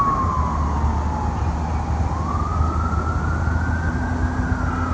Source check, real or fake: real